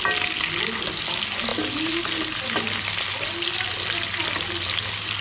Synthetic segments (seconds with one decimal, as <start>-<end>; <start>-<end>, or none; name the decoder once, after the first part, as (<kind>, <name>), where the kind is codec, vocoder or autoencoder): none